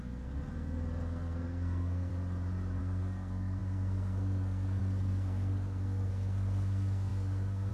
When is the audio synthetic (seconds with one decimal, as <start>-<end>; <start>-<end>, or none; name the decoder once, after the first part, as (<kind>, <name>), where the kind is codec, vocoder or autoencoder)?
0.0-2.1 (codec, SNAC); 2.8-7.7

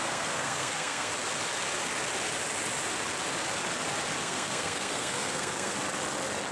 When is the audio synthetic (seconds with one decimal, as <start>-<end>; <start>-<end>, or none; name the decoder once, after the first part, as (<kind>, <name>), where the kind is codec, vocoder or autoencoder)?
0.0-1.1 (codec, SNAC); 4.2-5.7

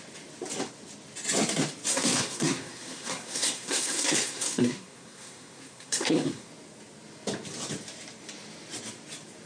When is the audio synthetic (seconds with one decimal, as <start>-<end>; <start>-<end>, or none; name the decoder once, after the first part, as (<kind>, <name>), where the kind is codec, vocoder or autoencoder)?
1.9-6.5 (codec, SNAC)

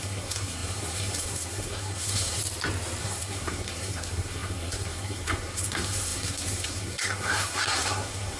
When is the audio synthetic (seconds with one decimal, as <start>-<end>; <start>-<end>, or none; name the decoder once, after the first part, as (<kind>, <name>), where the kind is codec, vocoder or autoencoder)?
0.0-2.4 (codec, SNAC); 3.0-8.4

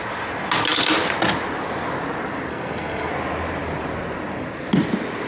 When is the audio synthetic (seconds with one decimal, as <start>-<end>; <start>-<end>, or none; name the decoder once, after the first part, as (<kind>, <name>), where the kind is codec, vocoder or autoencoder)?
2.5-3.1 (codec, SNAC)